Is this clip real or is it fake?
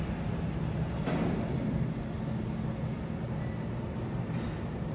real